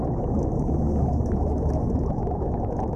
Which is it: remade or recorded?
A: remade